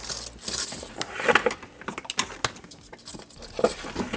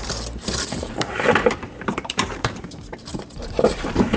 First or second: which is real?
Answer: first